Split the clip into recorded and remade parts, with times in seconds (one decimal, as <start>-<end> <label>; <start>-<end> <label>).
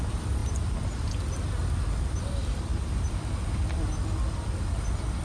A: 0.0-5.2 recorded